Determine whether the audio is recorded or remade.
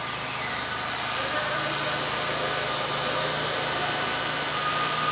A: recorded